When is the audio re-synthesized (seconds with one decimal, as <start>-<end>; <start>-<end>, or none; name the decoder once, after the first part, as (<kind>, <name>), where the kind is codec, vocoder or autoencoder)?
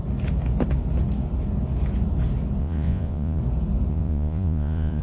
2.6-3.4 (vocoder, Vocos); 3.9-5.0